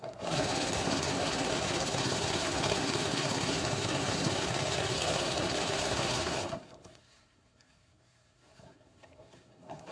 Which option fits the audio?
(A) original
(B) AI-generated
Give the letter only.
B